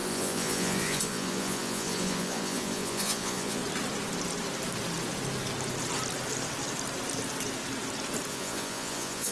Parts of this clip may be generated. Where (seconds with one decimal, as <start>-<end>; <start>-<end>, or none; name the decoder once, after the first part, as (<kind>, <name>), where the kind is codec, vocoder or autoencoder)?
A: 0.0-3.6 (vocoder, Vocos); 8.3-9.3

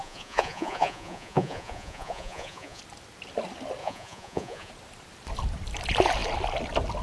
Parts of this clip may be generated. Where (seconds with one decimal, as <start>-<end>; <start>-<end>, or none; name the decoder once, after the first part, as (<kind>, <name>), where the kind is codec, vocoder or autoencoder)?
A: 0.0-2.8 (vocoder, Vocos); 3.8-4.7

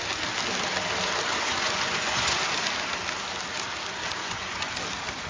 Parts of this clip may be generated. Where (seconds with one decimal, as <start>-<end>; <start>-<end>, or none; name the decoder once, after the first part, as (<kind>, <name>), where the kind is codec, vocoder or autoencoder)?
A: 1.3-2.4 (vocoder, Vocos); 4.2-4.7